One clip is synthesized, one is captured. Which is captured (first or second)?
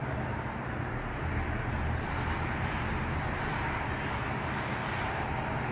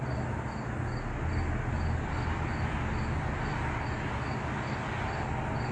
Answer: second